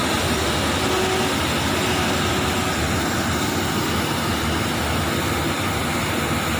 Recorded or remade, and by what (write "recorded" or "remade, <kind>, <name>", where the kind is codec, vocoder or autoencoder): recorded